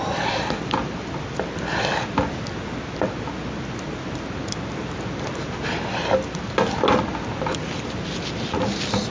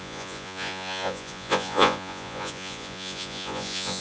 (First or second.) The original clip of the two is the first